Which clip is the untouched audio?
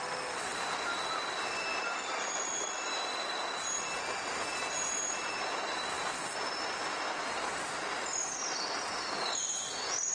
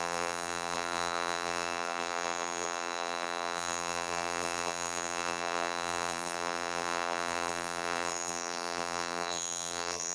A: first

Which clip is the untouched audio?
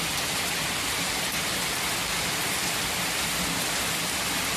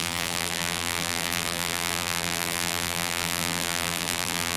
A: first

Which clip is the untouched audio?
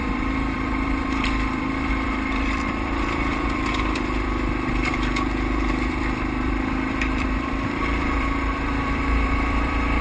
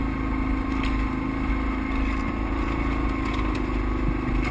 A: second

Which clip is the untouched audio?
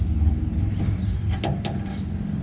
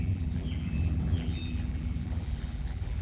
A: first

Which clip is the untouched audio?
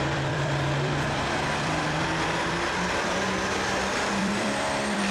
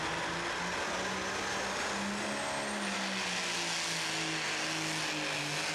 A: second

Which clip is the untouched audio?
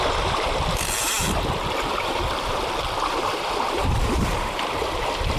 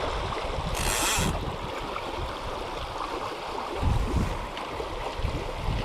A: second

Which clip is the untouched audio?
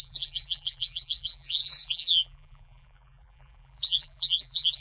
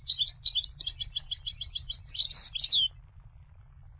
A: second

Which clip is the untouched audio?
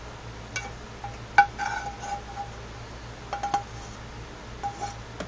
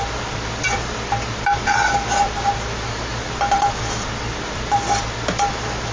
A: first